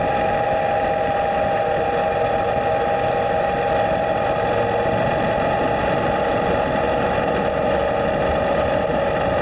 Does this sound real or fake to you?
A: real